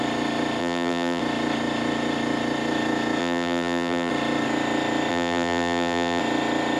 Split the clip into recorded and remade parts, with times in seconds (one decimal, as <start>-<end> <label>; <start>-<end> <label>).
0.0-0.6 recorded; 0.6-1.2 remade; 1.2-3.2 recorded; 3.2-4.1 remade; 4.1-5.1 recorded; 5.1-6.2 remade; 6.2-6.8 recorded